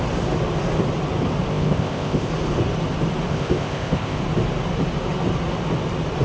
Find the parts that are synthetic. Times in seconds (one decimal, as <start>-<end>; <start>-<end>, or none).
1.5-2.3; 3.3-4.2